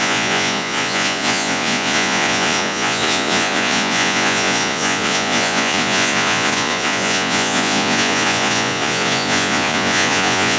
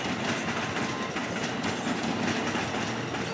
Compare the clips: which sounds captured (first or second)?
second